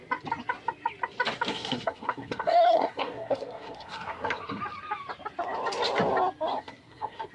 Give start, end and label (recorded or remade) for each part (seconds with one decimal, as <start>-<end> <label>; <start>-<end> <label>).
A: 0.0-1.5 recorded; 1.5-4.6 remade; 4.6-6.5 recorded; 6.5-7.3 remade

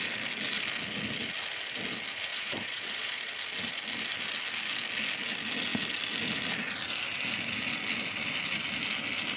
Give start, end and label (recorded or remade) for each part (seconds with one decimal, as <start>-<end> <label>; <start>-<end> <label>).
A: 0.0-2.3 recorded; 2.3-3.3 remade; 3.3-9.4 recorded

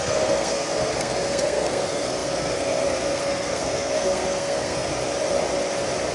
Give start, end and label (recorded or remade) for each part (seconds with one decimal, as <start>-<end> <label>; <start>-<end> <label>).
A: 0.0-4.9 remade; 4.9-6.1 recorded

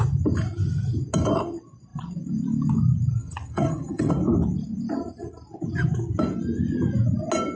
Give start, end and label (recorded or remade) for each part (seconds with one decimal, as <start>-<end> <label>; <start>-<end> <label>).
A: 0.0-3.2 recorded; 3.2-4.1 remade; 4.1-7.6 recorded

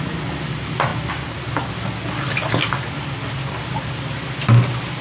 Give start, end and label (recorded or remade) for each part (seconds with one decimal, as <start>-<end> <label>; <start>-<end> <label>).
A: 0.0-5.0 recorded

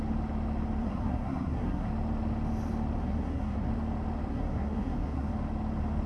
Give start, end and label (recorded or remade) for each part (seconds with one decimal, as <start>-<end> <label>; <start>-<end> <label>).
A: 0.0-0.8 recorded; 0.8-1.9 remade; 1.9-3.0 recorded; 3.0-3.7 remade; 3.7-4.3 recorded; 4.3-5.3 remade; 5.3-6.1 recorded